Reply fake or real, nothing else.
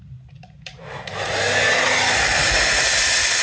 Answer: real